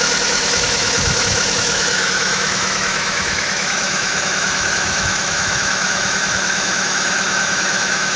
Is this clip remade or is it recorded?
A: remade